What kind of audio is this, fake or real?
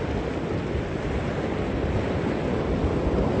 real